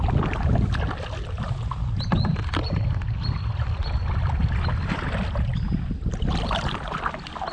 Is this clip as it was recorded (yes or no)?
yes